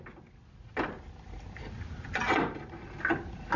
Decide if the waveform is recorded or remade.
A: recorded